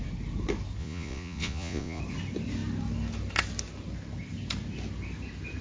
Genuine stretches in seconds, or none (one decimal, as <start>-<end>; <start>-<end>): 0.0-0.8; 2.0-5.6